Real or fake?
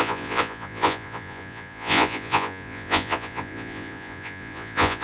fake